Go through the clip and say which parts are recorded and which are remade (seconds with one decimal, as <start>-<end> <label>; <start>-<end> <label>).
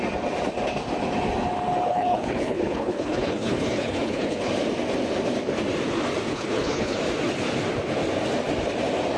0.0-1.9 recorded; 1.9-4.5 remade; 4.5-6.3 recorded; 6.3-7.0 remade; 7.0-9.2 recorded